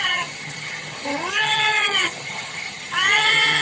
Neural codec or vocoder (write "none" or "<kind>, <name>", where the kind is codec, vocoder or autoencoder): vocoder, HiFi-GAN